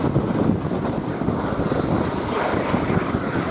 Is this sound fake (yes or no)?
no